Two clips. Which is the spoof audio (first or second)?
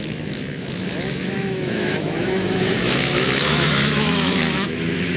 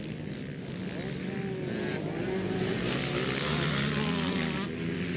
first